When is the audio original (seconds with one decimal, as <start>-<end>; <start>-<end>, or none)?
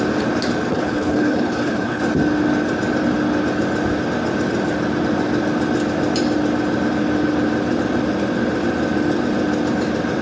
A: 0.0-0.7; 2.0-10.2